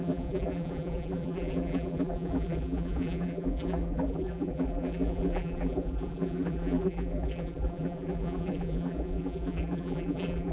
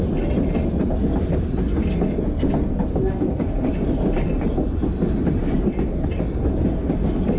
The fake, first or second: first